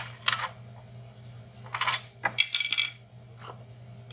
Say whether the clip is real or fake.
real